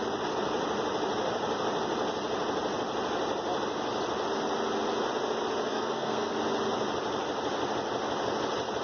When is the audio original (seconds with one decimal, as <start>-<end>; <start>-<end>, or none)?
0.0-5.7; 6.3-8.8